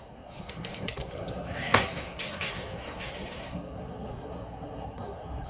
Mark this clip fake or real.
fake